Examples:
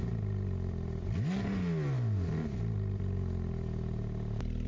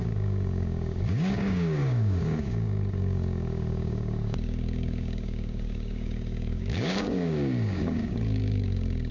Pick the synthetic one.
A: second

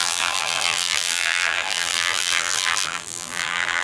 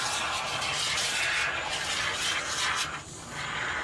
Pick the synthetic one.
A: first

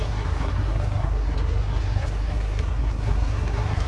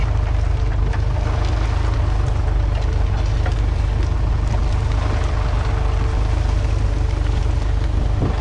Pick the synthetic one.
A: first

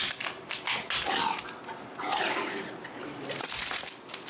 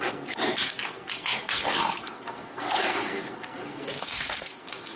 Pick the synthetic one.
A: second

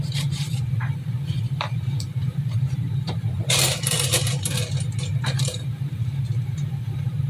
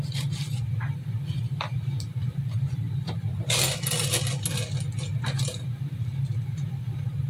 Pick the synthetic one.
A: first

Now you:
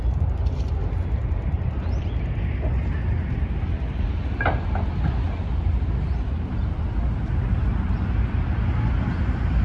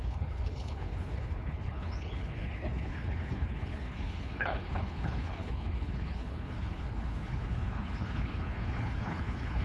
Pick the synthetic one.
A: second